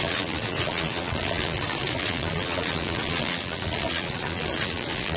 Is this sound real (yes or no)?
no